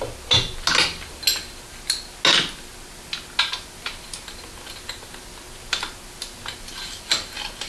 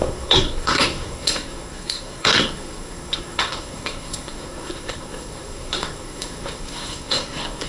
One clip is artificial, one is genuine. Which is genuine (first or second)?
first